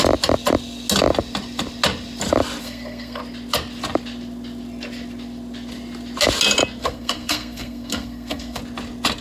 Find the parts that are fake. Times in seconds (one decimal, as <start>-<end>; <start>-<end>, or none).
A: 2.6-3.2; 6.8-8.6